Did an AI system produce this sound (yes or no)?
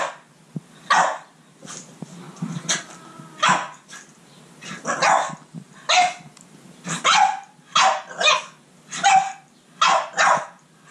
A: no